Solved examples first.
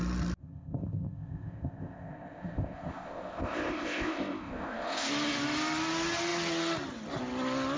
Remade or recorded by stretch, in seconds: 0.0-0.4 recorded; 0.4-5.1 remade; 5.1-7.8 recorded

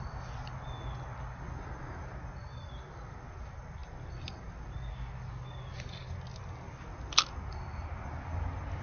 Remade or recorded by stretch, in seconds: 0.0-8.8 recorded

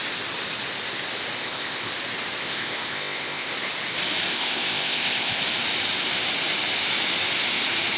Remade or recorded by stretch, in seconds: 0.0-1.4 recorded; 1.4-1.9 remade; 1.9-2.4 recorded; 2.4-3.5 remade; 3.5-4.3 recorded; 4.3-5.4 remade; 5.4-8.0 recorded

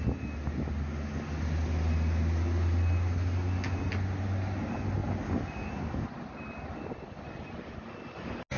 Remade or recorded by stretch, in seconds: 0.0-8.6 recorded

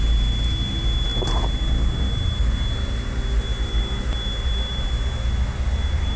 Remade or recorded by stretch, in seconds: 0.0-6.2 recorded

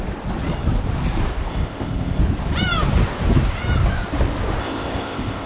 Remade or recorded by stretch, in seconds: 0.0-1.5 recorded; 1.5-2.2 remade; 2.2-4.6 recorded; 4.6-5.5 remade

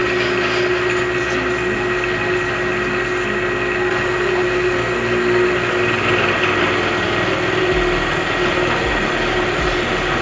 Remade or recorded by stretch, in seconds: 0.0-10.2 recorded